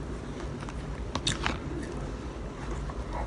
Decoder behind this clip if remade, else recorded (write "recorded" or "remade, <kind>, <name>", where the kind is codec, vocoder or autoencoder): recorded